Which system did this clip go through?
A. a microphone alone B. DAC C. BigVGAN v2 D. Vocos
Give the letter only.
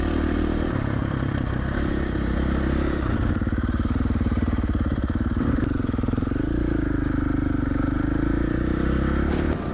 C